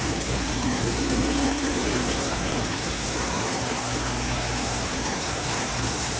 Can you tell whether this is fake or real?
fake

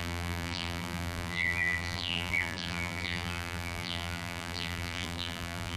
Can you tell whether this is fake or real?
fake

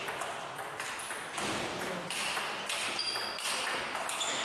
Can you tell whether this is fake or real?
real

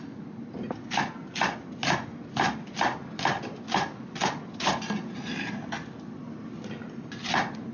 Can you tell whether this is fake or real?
real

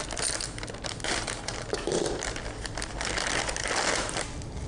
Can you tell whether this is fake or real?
real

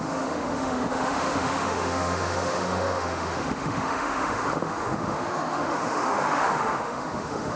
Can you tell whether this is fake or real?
fake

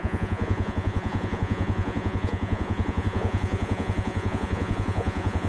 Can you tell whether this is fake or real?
fake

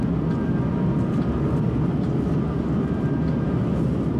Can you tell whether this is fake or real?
real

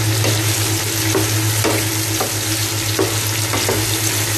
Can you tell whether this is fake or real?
real